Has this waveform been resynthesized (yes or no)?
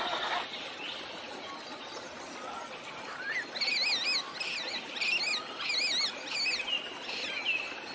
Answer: no